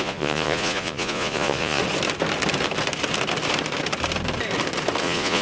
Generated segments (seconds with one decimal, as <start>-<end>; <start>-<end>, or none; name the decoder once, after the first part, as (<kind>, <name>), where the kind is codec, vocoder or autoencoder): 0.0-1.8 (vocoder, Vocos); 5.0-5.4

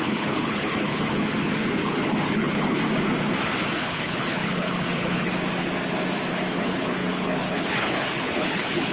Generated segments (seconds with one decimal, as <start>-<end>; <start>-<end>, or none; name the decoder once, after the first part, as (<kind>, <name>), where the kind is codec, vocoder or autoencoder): 0.0-2.8 (codec, HILCodec); 3.8-5.3; 6.5-8.9

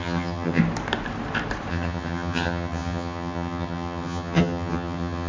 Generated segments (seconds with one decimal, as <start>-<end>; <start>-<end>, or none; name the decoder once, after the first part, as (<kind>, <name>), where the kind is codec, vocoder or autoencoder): 0.0-0.6 (vocoder, HiFi-GAN); 1.7-5.3

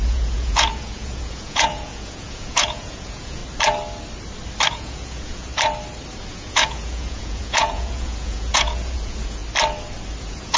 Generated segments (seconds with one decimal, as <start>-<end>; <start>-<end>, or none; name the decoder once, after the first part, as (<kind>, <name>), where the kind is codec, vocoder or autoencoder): 0.0-3.4 (vocoder, Vocos); 4.7-5.5; 6.3-9.4; 10.2-10.6

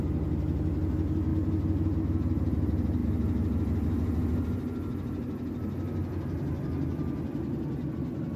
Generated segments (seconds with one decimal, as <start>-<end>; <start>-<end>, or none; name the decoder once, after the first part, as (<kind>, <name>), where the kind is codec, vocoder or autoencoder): none